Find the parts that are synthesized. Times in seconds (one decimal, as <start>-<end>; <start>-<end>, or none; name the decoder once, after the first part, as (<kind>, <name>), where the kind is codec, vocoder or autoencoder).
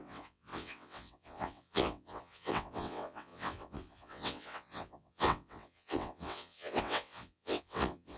0.0-8.2 (vocoder, WaveNeXt)